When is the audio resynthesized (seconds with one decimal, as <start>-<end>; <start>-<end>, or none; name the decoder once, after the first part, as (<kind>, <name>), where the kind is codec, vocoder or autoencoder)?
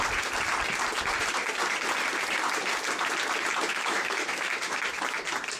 3.7-4.8 (autoencoder, DAC-VAE)